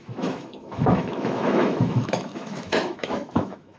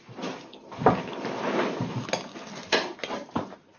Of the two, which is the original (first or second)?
second